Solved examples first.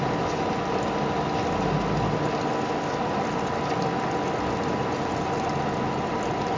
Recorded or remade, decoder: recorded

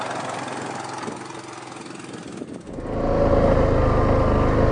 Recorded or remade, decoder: recorded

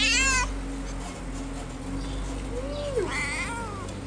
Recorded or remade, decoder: recorded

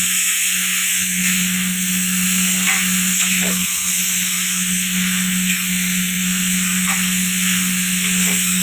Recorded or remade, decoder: remade, codec, SNAC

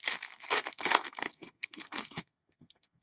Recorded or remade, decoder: remade, codec, SNAC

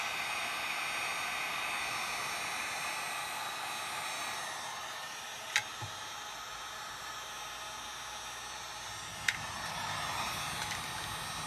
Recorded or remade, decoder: recorded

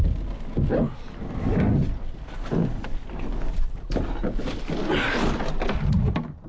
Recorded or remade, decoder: recorded